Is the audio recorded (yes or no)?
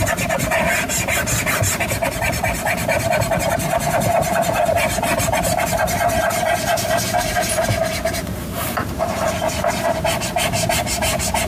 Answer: no